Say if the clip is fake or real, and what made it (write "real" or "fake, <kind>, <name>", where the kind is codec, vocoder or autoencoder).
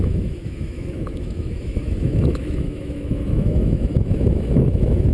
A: fake, autoencoder, DAC-VAE